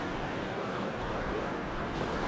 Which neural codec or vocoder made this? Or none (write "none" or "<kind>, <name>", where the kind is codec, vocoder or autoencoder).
codec, DAC